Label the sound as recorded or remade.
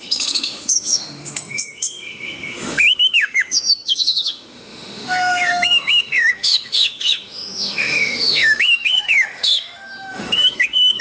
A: remade